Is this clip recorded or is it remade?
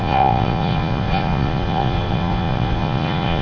remade